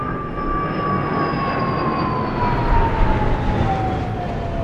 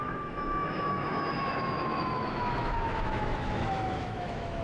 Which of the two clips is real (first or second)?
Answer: first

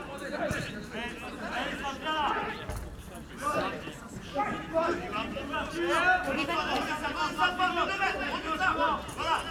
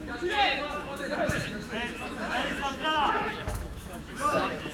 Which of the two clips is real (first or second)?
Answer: first